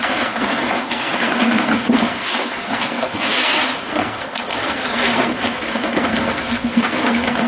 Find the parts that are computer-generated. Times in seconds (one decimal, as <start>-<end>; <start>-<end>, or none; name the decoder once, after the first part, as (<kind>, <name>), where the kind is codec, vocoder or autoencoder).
0.0-7.5 (codec, SNAC)